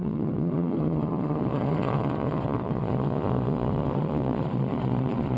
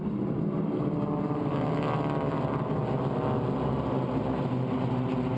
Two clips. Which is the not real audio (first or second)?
first